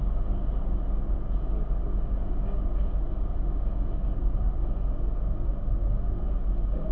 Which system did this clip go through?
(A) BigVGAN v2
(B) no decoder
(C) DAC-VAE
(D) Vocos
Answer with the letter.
B